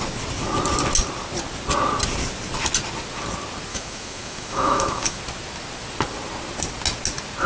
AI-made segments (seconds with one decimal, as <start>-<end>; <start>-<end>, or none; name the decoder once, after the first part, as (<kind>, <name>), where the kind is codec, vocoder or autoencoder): 3.7-5.2 (autoencoder, DAC-VAE)